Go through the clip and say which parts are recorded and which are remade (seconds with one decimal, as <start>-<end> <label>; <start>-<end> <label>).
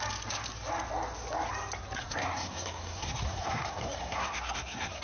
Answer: 0.0-2.0 recorded; 2.0-5.0 remade